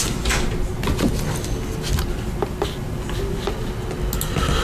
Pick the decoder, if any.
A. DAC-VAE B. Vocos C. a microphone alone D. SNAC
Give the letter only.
C